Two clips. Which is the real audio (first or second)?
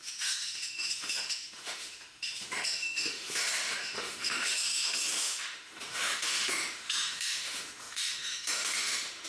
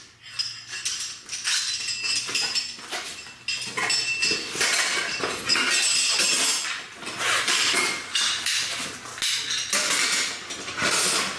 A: second